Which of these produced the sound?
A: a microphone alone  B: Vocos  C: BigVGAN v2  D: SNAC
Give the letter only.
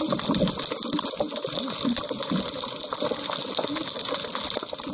A